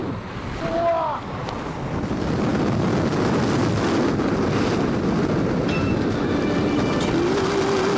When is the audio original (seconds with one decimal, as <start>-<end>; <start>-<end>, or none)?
0.0-8.0